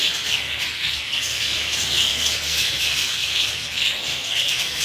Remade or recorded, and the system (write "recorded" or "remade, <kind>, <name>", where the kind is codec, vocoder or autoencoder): remade, codec, SNAC